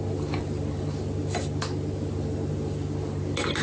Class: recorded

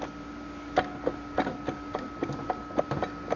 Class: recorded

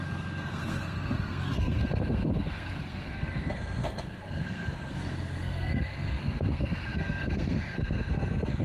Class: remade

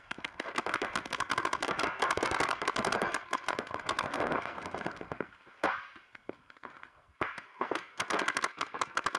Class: remade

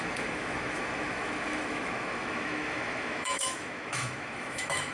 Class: remade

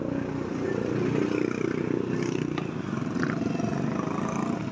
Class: recorded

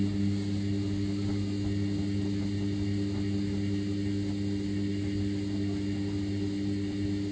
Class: recorded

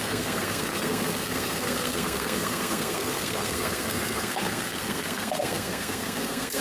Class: remade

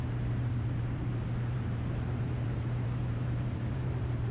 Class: remade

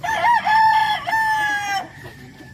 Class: remade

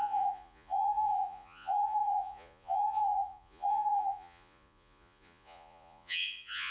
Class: remade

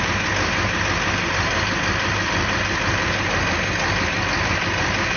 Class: recorded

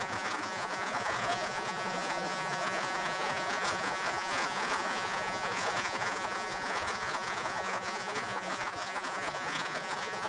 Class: remade